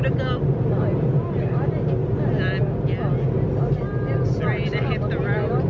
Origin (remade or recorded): recorded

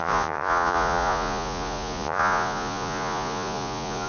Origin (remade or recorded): remade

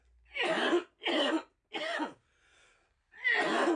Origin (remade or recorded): recorded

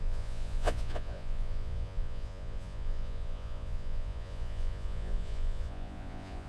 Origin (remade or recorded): remade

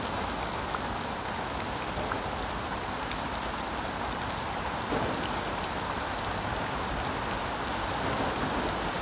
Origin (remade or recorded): recorded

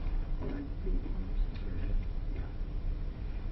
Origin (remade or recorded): recorded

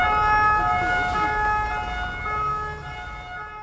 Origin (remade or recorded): recorded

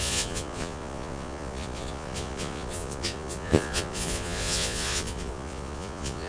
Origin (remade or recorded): remade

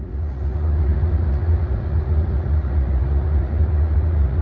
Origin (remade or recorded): remade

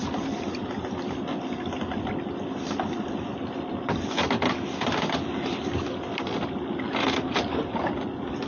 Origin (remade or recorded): recorded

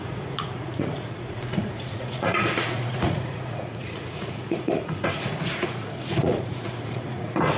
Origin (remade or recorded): remade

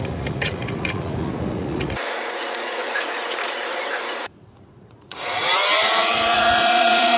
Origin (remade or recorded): remade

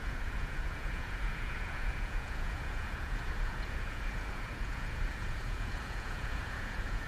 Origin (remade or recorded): remade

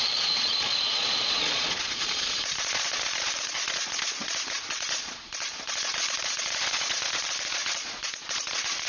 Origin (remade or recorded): remade